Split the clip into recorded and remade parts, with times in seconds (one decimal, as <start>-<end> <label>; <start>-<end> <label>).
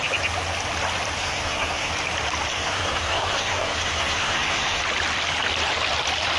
0.0-1.2 recorded; 1.2-1.9 remade; 1.9-2.5 recorded; 2.5-4.8 remade; 4.8-6.4 recorded